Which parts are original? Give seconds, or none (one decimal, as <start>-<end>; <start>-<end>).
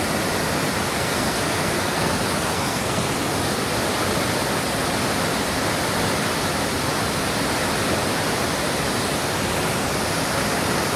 0.0-0.9; 3.1-11.0